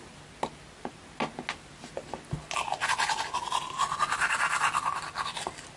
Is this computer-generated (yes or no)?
no